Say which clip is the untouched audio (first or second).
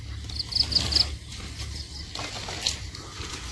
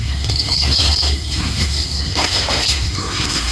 first